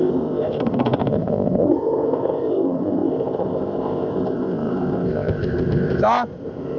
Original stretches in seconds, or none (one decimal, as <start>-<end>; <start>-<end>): none